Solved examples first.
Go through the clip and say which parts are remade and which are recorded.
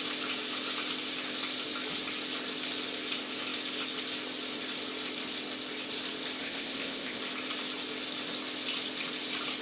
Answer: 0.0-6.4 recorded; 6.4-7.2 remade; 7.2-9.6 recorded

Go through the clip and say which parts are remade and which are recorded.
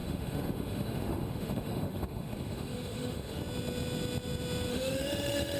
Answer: 0.0-3.4 remade; 3.4-4.7 recorded; 4.7-5.6 remade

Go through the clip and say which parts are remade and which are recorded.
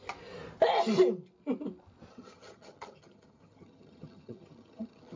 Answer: 0.0-2.1 recorded; 2.1-5.2 remade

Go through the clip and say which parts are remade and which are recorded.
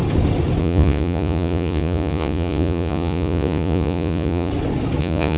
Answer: 0.0-0.6 recorded; 0.6-4.5 remade; 4.5-5.0 recorded; 5.0-5.4 remade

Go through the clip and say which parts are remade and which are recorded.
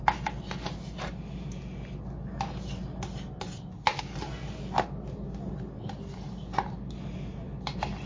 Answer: 0.0-8.1 recorded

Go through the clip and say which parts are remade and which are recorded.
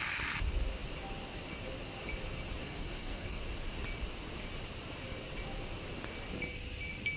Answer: 0.0-2.6 recorded; 2.6-3.4 remade; 3.4-7.2 recorded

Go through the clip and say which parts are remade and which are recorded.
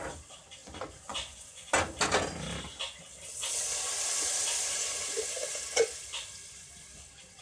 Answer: 0.0-0.6 recorded; 0.6-1.7 remade; 1.7-7.4 recorded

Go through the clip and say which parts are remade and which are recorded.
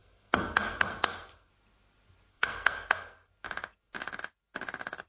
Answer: 0.0-1.5 remade; 1.5-2.3 recorded; 2.3-3.3 remade; 3.3-5.1 recorded